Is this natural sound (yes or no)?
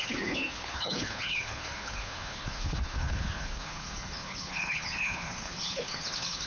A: no